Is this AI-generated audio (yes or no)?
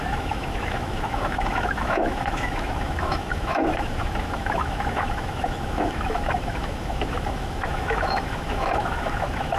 yes